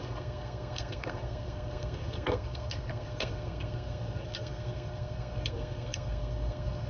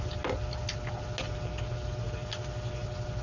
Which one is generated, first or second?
first